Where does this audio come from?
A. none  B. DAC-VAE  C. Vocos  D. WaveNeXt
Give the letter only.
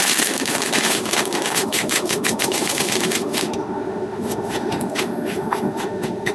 B